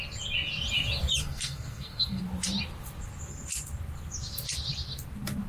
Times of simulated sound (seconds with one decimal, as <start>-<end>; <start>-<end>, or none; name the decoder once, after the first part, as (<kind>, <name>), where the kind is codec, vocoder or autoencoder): 1.2-2.2 (codec, SNAC)